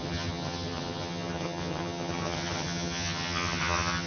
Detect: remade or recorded remade